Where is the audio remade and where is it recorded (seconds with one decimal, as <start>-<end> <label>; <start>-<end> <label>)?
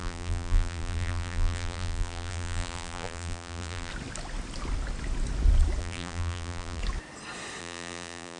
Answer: 0.0-3.9 remade; 3.9-5.8 recorded; 5.8-6.8 remade; 6.8-7.6 recorded; 7.6-8.4 remade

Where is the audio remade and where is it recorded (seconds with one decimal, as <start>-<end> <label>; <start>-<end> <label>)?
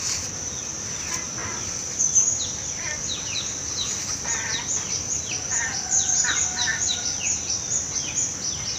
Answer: 0.0-8.8 recorded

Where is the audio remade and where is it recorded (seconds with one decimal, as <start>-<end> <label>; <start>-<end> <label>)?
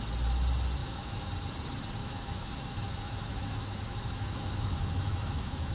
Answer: 0.0-0.8 recorded; 0.8-1.3 remade; 1.3-2.0 recorded; 2.0-5.7 remade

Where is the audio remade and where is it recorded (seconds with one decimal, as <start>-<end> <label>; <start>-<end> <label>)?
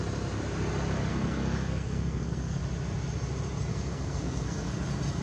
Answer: 0.0-1.1 recorded; 1.1-2.6 remade; 2.6-3.7 recorded; 3.7-4.7 remade; 4.7-5.2 recorded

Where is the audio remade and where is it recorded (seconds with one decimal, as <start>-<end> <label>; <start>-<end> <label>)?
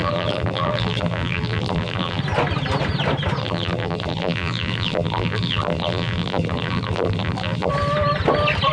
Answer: 0.0-2.2 remade; 2.2-3.4 recorded; 3.4-7.7 remade; 7.7-8.7 recorded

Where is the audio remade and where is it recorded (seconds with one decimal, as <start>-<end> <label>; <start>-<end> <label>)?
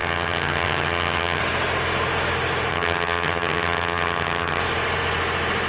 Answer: 0.0-1.4 remade; 1.4-2.7 recorded; 2.7-4.6 remade; 4.6-5.7 recorded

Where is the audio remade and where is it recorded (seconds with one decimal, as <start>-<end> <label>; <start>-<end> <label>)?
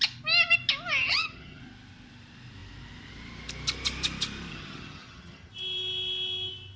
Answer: 0.0-1.0 recorded; 1.0-1.6 remade; 1.6-4.5 recorded; 4.5-5.5 remade; 5.5-6.8 recorded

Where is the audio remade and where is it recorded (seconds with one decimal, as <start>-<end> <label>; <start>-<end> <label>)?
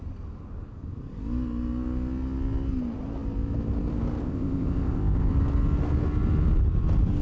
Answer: 0.0-4.2 recorded; 4.2-5.3 remade; 5.3-7.2 recorded